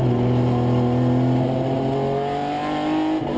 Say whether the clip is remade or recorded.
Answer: recorded